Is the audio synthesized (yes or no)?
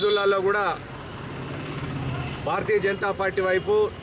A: no